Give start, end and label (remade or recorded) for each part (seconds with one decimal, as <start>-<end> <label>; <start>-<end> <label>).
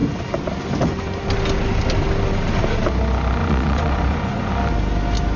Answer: 0.0-3.4 recorded; 3.4-4.5 remade; 4.5-5.4 recorded